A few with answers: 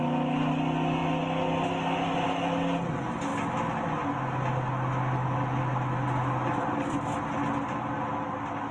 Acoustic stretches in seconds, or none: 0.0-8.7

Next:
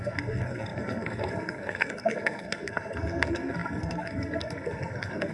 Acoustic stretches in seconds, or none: none

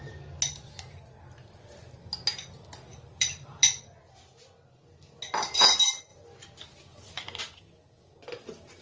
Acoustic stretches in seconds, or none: 0.0-2.9; 4.3-6.1; 7.4-8.8

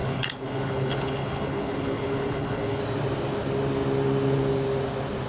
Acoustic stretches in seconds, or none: 2.8-5.3